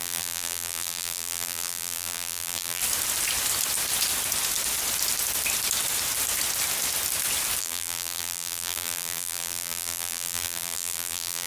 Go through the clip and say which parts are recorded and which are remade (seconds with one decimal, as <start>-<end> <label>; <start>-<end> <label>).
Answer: 0.0-2.8 remade; 2.8-7.6 recorded; 7.6-11.5 remade